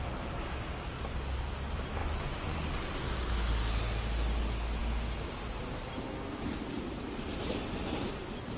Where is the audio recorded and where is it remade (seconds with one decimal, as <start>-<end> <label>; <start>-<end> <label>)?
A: 0.0-2.0 recorded; 2.0-2.7 remade; 2.7-8.6 recorded